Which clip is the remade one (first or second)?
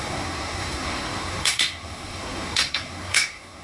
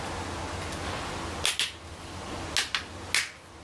first